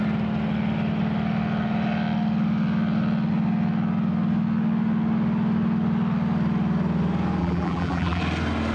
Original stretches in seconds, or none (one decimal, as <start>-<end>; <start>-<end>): 0.0-7.4; 8.2-8.7